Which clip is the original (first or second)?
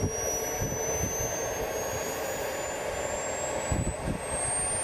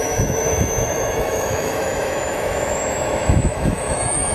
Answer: first